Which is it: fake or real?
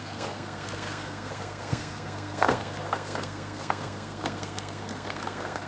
fake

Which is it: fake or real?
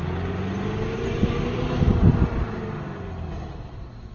real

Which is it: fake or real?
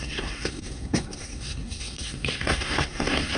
fake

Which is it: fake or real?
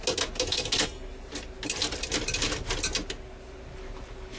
real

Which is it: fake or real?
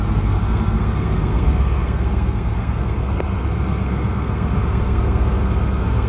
fake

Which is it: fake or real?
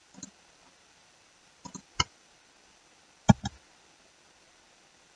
real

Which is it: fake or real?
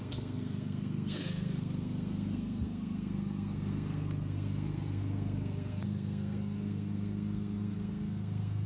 fake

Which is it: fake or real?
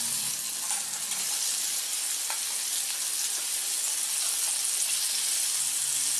real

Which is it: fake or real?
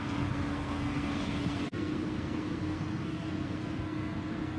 fake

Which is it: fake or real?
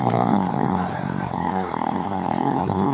fake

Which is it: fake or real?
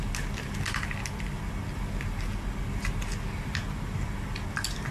real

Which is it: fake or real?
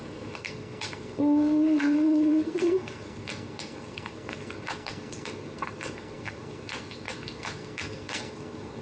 fake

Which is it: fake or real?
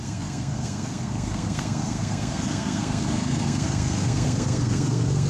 fake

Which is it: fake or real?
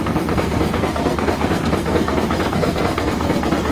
fake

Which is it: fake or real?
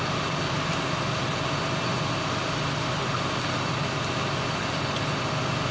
real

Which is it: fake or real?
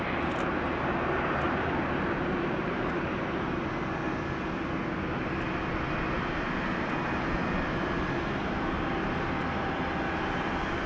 real